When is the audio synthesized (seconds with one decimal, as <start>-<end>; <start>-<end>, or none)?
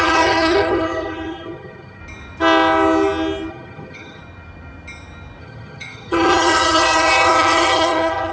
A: 0.0-2.0; 3.5-4.2; 5.4-8.3